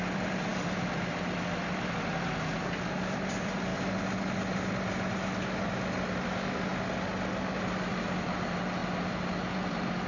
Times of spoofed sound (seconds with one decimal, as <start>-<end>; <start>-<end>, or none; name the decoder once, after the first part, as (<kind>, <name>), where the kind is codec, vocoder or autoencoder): 0.0-3.7 (vocoder, BigVGAN v2); 6.2-6.7; 7.8-8.8; 9.5-10.1